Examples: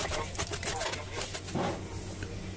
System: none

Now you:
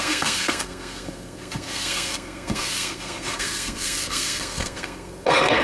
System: codec, SNAC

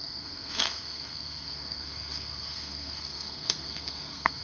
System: codec, SNAC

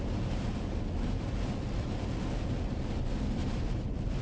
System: none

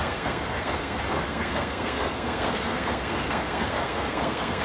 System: codec, SNAC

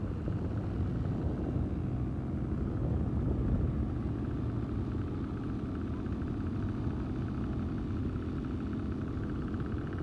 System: none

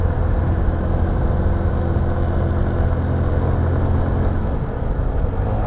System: none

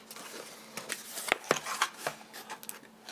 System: none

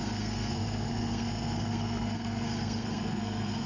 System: codec, SNAC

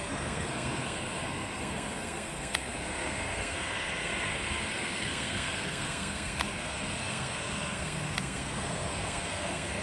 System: codec, SNAC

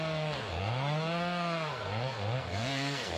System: codec, SNAC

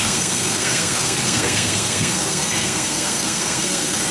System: codec, SNAC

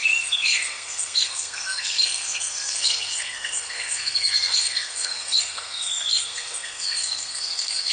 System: codec, SNAC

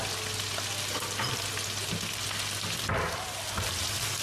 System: none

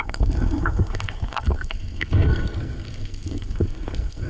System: codec, SNAC